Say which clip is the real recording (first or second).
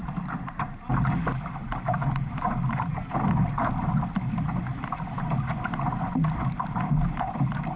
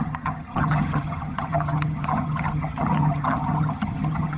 first